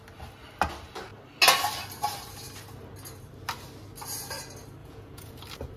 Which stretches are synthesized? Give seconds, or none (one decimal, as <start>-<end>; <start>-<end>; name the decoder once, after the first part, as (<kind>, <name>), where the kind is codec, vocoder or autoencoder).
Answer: 4.8-5.3 (vocoder, Vocos)